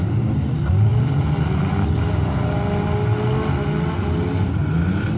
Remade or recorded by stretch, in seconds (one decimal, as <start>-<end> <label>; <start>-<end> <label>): 0.0-5.2 recorded